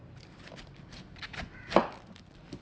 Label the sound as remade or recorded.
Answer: recorded